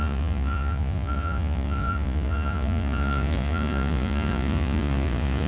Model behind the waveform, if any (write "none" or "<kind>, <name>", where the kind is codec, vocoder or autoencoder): vocoder, Vocos